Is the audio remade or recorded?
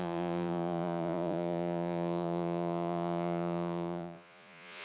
remade